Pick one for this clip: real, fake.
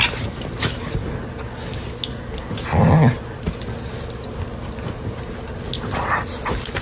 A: real